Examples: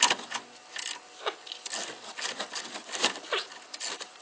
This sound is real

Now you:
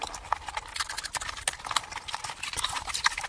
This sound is real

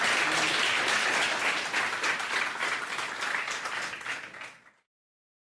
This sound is real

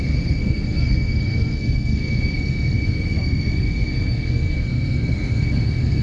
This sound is fake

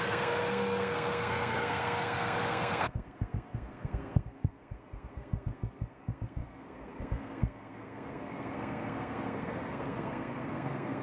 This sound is fake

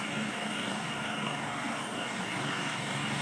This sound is fake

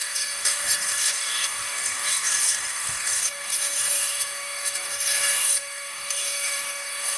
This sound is fake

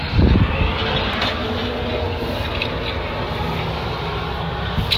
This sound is real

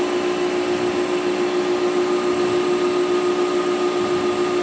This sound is real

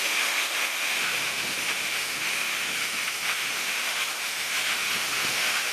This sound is fake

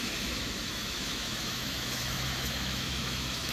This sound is fake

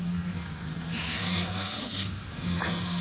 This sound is fake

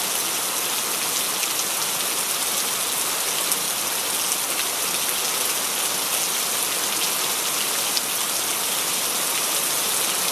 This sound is real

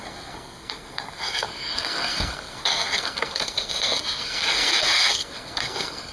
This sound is fake